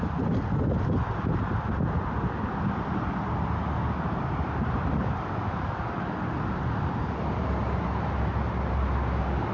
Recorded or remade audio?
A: recorded